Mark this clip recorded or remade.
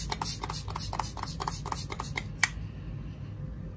recorded